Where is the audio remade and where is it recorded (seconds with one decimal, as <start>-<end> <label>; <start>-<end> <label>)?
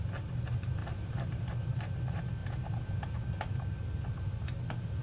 0.0-0.8 recorded; 0.8-1.5 remade; 1.5-5.0 recorded